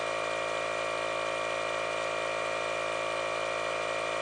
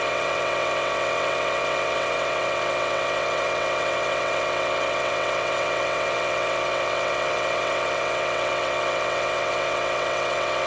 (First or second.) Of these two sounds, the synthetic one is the second